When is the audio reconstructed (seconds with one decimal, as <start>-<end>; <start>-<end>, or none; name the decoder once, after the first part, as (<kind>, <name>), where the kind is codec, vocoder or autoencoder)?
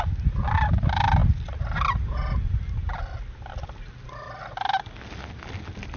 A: none